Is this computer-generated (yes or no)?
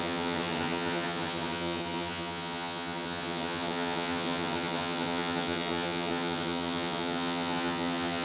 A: yes